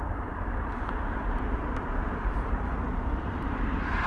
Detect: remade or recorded remade